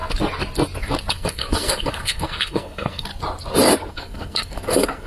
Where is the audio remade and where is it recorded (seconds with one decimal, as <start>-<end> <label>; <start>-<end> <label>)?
0.0-1.1 recorded; 1.1-3.1 remade; 3.1-3.9 recorded; 3.9-5.1 remade